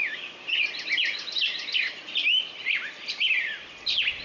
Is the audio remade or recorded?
recorded